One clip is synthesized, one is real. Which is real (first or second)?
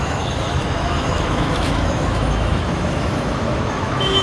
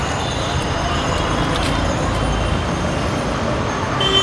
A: second